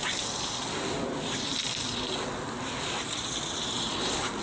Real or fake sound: real